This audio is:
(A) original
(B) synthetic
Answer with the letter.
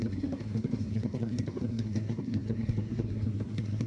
B